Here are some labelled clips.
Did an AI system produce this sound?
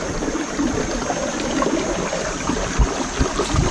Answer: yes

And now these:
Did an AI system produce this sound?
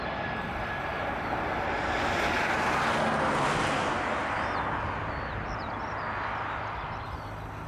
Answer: no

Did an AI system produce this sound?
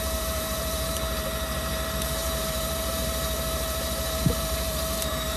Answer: yes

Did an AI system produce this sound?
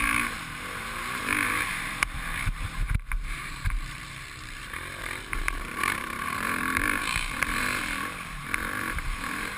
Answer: yes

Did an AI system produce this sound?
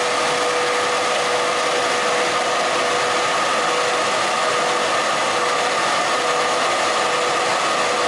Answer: no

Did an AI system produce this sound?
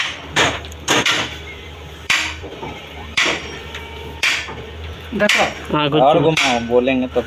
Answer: yes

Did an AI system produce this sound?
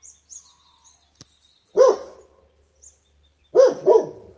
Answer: no